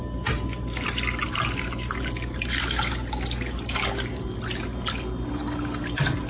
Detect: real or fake real